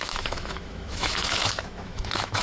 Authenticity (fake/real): fake